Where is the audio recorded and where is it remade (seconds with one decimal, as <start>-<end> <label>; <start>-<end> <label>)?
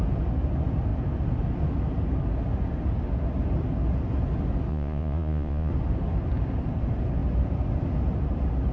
0.0-4.7 recorded; 4.7-5.7 remade; 5.7-8.7 recorded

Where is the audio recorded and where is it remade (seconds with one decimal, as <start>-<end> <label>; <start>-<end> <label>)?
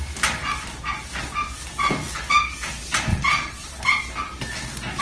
0.0-3.1 recorded; 3.1-3.8 remade; 3.8-5.0 recorded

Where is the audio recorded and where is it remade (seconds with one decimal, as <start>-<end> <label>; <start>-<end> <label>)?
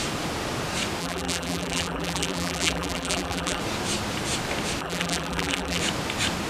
0.0-1.0 recorded; 1.0-3.6 remade; 3.6-4.8 recorded; 4.8-5.8 remade; 5.8-6.5 recorded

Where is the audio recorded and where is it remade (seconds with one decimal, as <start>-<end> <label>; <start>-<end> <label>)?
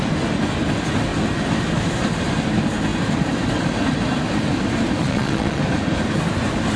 0.0-5.0 recorded; 5.0-5.6 remade; 5.6-6.8 recorded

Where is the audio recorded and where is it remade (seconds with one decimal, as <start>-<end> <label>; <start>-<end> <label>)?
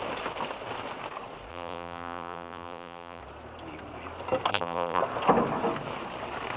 0.0-1.5 recorded; 1.5-3.2 remade; 3.2-4.5 recorded; 4.5-5.0 remade; 5.0-6.6 recorded